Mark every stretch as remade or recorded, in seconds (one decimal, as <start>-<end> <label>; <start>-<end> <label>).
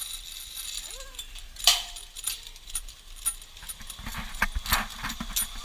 0.0-4.1 remade; 4.1-5.6 recorded